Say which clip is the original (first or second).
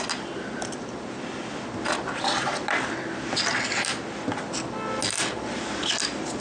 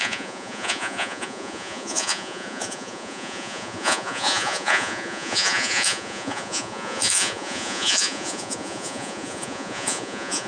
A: first